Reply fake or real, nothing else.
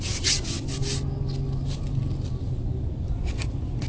real